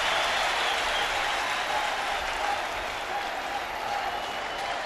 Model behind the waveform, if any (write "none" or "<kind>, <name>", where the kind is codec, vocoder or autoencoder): vocoder, BigVGAN v2